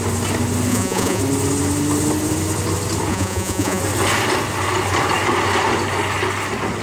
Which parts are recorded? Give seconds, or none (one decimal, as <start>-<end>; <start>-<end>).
0.0-0.7; 1.2-3.1; 3.8-6.8